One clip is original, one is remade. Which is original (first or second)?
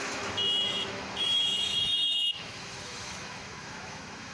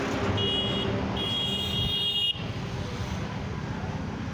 second